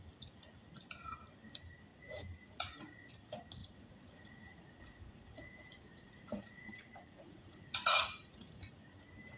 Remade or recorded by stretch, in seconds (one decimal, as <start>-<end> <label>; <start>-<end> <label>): 0.0-1.9 recorded; 1.9-3.1 remade; 3.1-3.6 recorded; 3.6-8.7 remade; 8.7-9.4 recorded